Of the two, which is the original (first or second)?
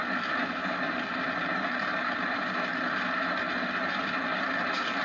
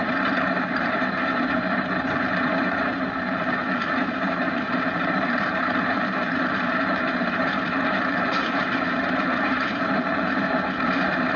first